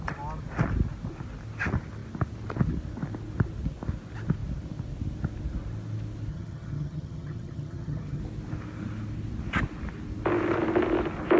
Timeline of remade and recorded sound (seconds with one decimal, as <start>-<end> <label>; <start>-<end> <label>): 0.0-6.3 recorded; 6.3-8.2 remade; 8.2-11.4 recorded